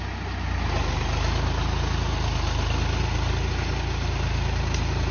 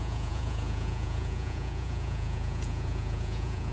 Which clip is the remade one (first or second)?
second